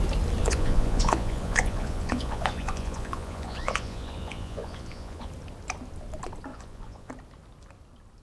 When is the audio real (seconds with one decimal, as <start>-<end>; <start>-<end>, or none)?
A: 0.0-0.4; 5.3-6.5; 7.1-8.2